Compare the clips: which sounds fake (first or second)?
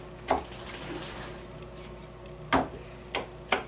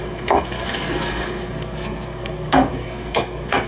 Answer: second